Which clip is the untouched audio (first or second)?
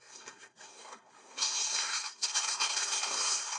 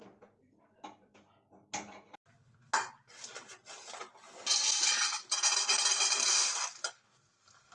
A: second